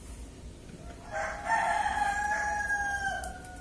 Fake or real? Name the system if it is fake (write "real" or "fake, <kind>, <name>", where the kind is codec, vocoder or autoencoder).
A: real